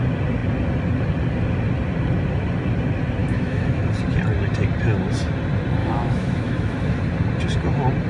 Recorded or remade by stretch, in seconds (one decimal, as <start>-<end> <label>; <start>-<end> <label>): 0.0-3.2 recorded; 3.2-3.8 remade; 3.8-5.8 recorded; 5.8-7.0 remade; 7.0-8.1 recorded